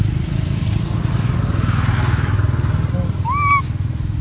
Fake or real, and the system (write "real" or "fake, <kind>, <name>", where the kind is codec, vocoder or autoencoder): real